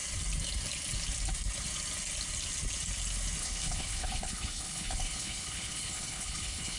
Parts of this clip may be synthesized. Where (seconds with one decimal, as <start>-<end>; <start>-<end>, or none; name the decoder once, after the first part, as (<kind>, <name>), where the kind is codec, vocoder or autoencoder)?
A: 3.4-6.8 (codec, HILCodec)